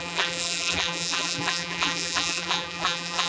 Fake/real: fake